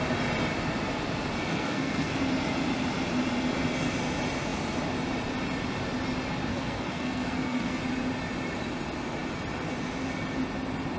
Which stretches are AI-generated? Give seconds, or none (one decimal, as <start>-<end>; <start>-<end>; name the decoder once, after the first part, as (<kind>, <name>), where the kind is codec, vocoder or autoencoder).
1.4-2.1 (codec, SNAC); 6.5-7.8